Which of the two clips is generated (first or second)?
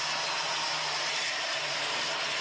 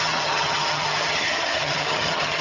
second